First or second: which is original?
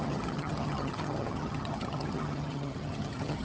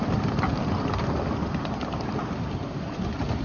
second